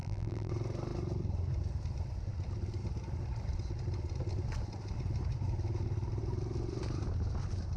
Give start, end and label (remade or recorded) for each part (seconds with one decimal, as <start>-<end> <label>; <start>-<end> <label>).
0.0-0.5 remade; 0.5-7.8 recorded